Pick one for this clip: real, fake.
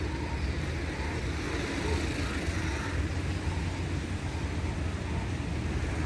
real